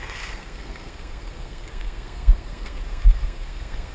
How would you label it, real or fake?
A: fake